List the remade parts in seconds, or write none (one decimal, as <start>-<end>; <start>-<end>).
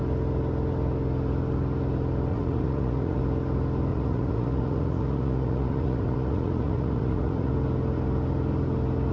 2.3-3.2; 3.9-7.5